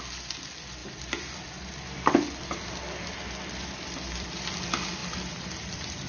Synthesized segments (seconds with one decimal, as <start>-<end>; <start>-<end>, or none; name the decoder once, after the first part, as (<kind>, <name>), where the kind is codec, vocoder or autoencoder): 0.8-4.5 (vocoder, BigVGAN v2); 5.0-6.1